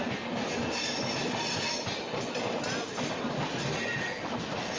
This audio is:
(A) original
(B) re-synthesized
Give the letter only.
A